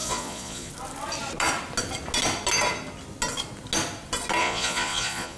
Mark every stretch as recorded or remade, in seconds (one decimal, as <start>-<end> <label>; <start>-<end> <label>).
0.0-0.7 remade; 0.7-4.4 recorded; 4.4-5.4 remade